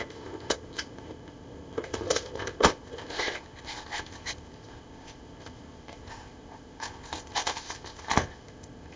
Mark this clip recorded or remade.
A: remade